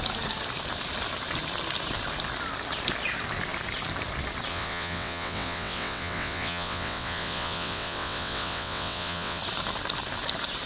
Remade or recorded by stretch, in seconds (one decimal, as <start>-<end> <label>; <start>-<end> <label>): 0.0-4.5 recorded; 4.5-9.4 remade; 9.4-10.7 recorded